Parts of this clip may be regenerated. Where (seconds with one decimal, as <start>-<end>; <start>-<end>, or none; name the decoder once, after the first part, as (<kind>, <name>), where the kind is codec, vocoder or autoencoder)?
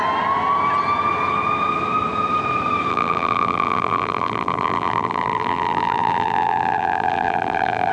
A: 2.9-7.9 (vocoder, BigVGAN v2)